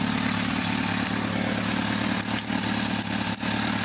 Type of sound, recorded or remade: recorded